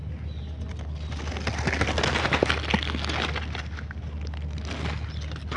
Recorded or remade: recorded